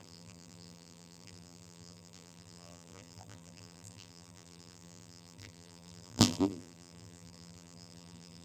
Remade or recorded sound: remade